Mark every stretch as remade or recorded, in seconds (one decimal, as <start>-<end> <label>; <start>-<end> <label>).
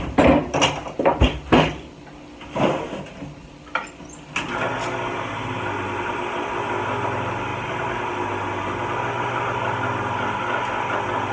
0.0-7.5 recorded; 7.5-8.1 remade; 8.1-11.3 recorded